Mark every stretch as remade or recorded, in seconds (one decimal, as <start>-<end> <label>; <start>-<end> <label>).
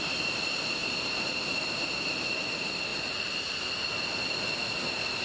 0.0-0.8 recorded; 0.8-1.7 remade; 1.7-2.9 recorded; 2.9-3.6 remade; 3.6-5.2 recorded